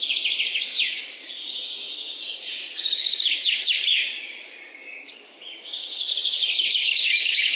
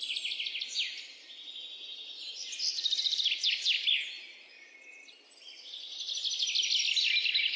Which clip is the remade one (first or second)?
first